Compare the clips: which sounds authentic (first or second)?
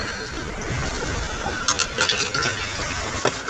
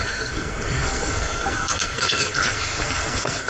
first